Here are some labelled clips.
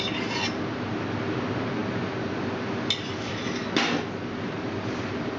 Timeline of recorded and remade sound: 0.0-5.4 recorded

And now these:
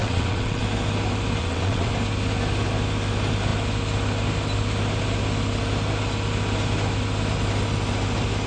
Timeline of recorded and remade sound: 0.0-0.6 remade; 0.6-1.4 recorded; 1.4-1.9 remade; 1.9-8.5 recorded

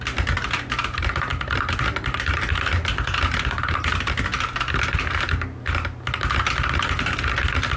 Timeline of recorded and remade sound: 0.0-7.8 recorded

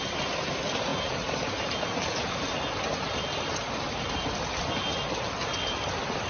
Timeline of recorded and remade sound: 0.0-6.3 recorded

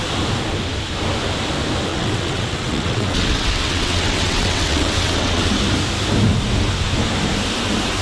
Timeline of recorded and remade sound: 0.0-1.9 recorded; 1.9-5.5 remade; 5.5-8.0 recorded

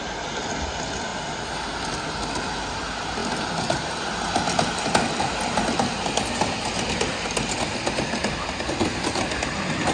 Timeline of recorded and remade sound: 0.0-9.9 recorded

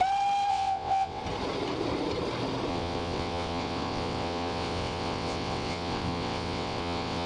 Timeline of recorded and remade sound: 0.0-0.5 recorded; 0.5-1.2 remade; 1.2-2.7 recorded; 2.7-7.3 remade

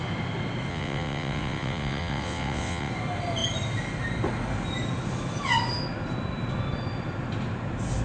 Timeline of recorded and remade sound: 0.0-0.7 recorded; 0.7-2.9 remade; 2.9-8.0 recorded